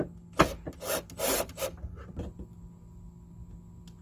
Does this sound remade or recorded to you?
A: recorded